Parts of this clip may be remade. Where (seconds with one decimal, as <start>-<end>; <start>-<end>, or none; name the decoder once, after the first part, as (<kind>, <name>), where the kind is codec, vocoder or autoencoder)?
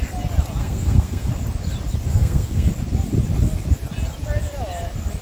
0.6-1.3 (codec, SNAC); 2.1-2.7